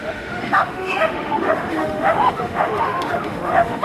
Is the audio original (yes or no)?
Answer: no